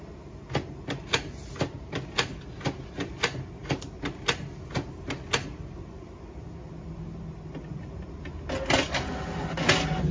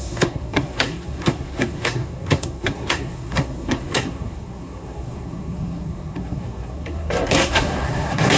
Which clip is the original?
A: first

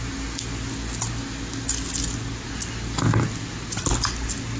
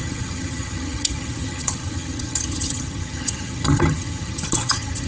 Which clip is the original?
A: first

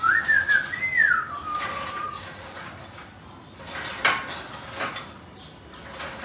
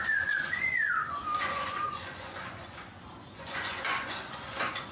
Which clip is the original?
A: first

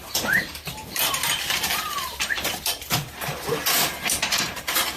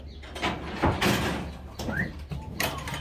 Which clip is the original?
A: second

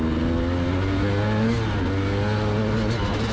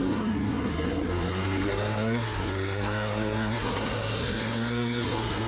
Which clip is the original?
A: first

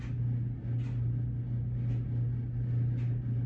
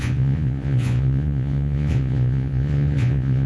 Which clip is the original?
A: first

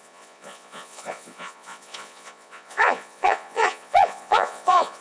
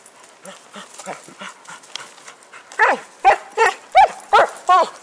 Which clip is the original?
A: second